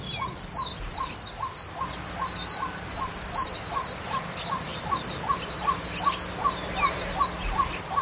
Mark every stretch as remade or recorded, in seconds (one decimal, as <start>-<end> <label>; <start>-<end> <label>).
0.0-8.0 recorded

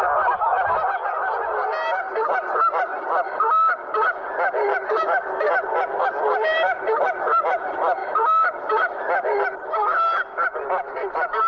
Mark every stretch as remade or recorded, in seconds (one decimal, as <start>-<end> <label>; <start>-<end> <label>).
0.0-8.0 recorded; 8.0-9.0 remade; 9.0-11.5 recorded